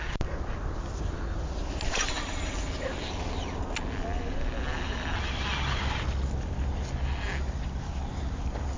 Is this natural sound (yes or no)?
yes